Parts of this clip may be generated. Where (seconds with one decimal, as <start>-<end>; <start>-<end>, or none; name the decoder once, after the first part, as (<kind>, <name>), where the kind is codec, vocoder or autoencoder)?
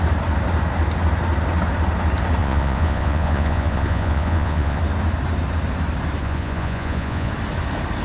2.4-4.8 (vocoder, Vocos); 6.2-7.3